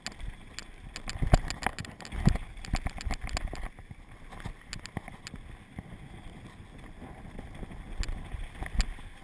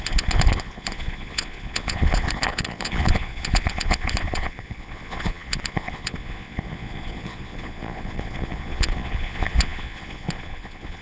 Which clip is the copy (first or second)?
second